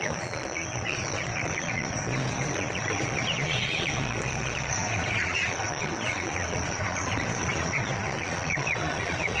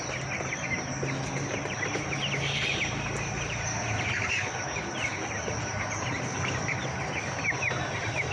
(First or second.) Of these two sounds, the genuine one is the second